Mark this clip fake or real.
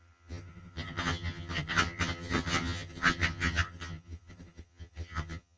fake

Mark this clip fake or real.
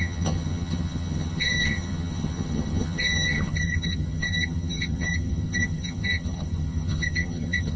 fake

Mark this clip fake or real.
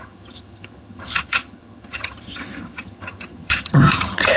fake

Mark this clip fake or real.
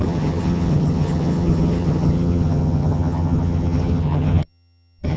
fake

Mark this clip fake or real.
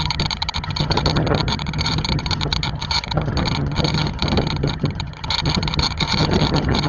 fake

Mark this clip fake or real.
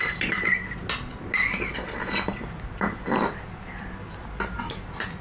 real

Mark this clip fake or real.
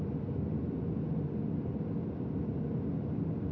real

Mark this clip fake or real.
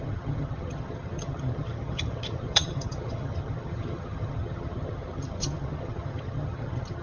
fake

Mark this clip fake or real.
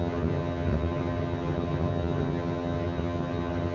fake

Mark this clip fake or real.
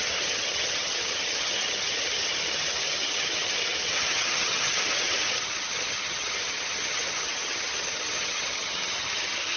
fake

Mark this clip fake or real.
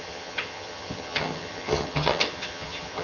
fake